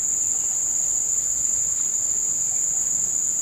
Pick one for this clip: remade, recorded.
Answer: recorded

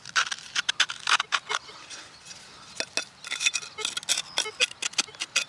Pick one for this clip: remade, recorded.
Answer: recorded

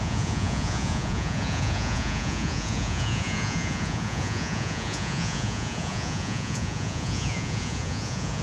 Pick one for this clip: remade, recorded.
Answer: remade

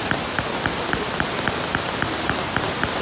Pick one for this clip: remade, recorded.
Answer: recorded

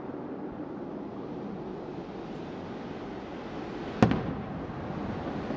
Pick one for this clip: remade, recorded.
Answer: recorded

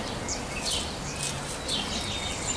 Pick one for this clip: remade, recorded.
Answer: recorded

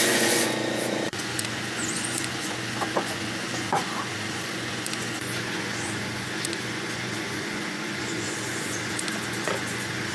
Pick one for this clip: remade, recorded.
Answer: remade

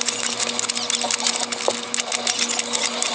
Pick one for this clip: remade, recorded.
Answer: recorded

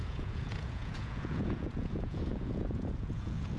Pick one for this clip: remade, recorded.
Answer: remade